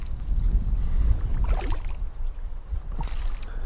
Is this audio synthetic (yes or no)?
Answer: no